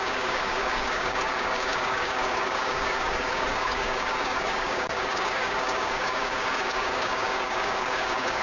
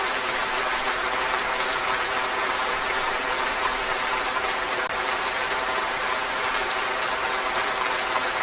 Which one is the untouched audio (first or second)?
second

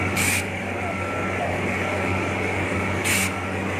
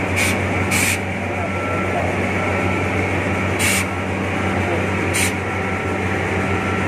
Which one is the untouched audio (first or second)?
second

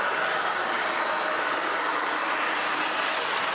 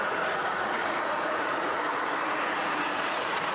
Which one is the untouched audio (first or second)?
first